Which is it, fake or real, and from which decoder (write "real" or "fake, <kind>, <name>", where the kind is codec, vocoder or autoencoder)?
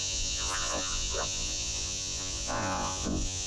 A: fake, vocoder, Vocos